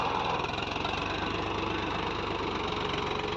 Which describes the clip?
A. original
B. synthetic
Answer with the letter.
A